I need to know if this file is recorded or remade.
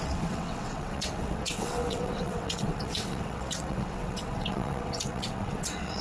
remade